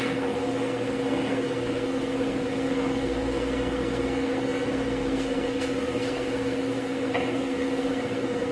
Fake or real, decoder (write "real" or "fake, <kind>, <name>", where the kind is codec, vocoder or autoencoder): fake, codec, SNAC